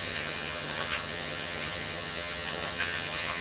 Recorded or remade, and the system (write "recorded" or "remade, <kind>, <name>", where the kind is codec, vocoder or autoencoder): remade, vocoder, HiFi-GAN